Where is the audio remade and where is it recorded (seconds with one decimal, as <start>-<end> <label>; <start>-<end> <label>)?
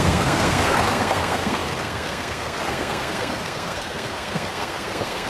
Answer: 0.0-5.3 remade